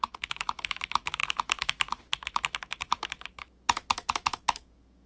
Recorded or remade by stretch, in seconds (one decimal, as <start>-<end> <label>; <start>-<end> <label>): 0.0-5.1 remade

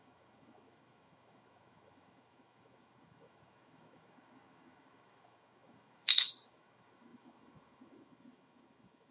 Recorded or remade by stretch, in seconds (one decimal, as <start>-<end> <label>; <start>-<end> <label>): 0.0-9.1 remade

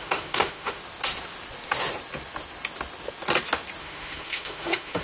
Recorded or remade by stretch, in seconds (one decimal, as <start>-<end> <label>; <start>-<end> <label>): 0.0-0.8 remade; 0.8-3.8 recorded; 3.8-5.0 remade

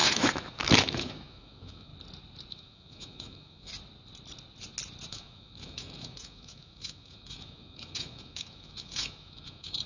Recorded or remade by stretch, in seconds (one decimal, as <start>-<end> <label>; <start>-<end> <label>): 0.0-1.9 remade; 1.9-2.5 recorded; 2.5-3.7 remade; 3.7-5.1 recorded; 5.1-9.9 remade

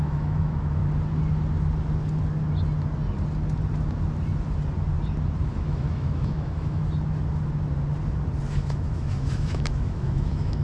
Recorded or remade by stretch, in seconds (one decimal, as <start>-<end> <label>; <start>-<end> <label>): 0.0-0.8 remade; 0.8-5.5 recorded; 5.5-6.8 remade; 6.8-8.5 recorded; 8.5-10.6 remade